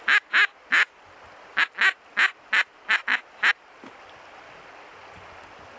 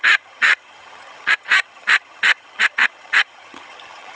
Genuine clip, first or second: first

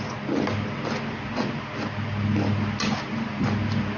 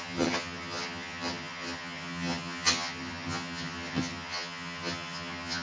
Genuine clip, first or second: first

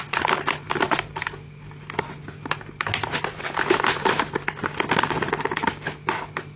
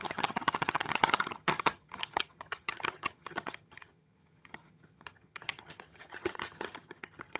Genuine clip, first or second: first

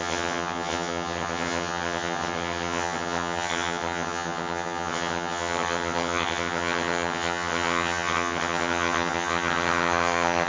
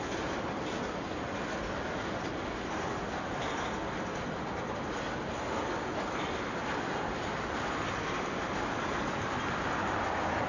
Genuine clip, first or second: second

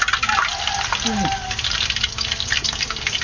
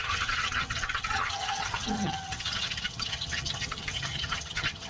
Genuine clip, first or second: first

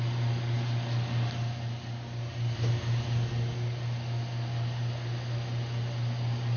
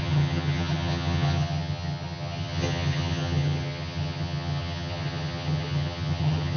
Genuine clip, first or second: first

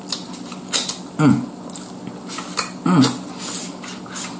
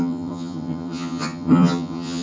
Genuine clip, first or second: first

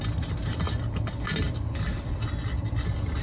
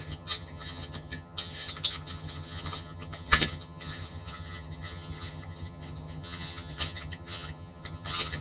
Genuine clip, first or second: first